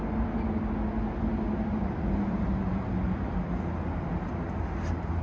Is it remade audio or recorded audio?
recorded